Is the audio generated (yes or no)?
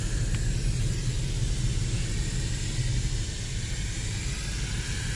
no